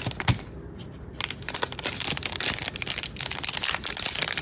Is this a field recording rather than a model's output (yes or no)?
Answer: yes